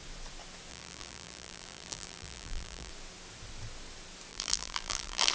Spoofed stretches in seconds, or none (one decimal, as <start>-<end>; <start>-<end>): 0.7-2.9; 4.3-5.3